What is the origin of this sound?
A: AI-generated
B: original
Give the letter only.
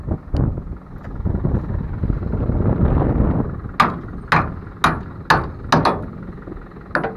B